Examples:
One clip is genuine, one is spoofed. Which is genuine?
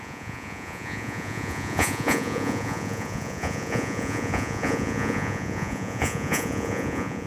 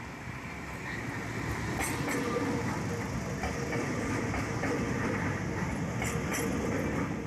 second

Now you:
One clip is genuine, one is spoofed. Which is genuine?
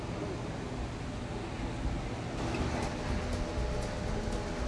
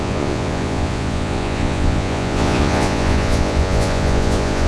first